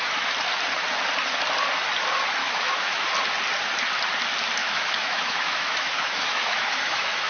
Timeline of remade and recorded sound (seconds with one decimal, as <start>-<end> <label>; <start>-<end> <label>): 0.0-2.4 recorded; 2.4-3.1 remade; 3.1-4.6 recorded; 4.6-7.3 remade